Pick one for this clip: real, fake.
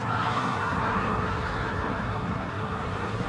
fake